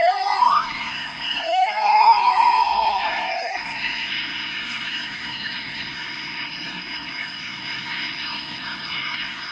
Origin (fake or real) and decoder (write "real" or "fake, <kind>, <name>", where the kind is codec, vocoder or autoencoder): fake, codec, SNAC